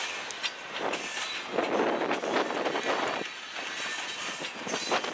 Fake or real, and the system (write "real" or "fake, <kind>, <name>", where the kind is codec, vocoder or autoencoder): real